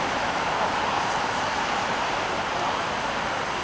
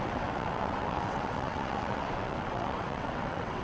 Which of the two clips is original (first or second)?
first